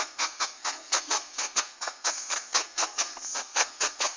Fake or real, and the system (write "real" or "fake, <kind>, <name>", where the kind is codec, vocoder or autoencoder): fake, codec, SNAC